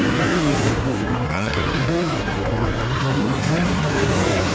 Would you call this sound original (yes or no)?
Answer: no